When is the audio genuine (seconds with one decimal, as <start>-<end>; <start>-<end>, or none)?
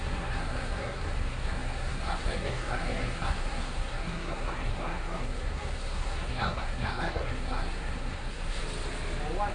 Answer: 8.6-9.5